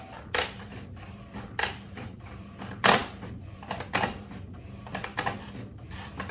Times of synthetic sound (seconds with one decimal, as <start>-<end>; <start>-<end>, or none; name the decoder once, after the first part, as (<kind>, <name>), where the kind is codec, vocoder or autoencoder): 0.0-6.3 (vocoder, BigVGAN v2)